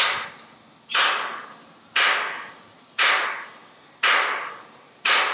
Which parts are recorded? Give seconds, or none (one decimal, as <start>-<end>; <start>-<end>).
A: 0.0-5.3